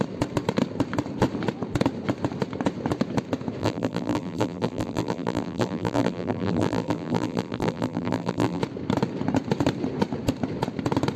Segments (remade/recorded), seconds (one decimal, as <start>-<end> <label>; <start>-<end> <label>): 0.0-3.6 recorded; 3.6-8.6 remade; 8.6-11.2 recorded